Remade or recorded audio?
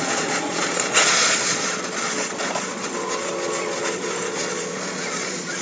remade